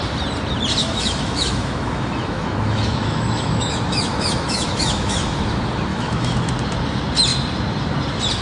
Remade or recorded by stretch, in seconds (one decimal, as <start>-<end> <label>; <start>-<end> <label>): 0.0-0.8 recorded; 0.8-5.4 remade; 5.4-5.9 recorded; 5.9-6.5 remade; 6.5-8.4 recorded